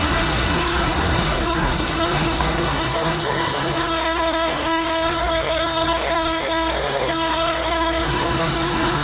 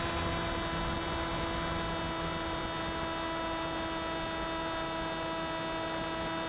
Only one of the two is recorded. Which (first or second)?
second